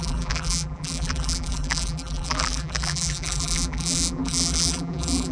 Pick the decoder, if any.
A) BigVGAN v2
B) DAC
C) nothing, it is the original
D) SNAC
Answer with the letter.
A